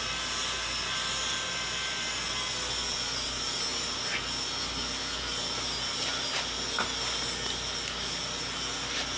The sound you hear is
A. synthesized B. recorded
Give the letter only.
B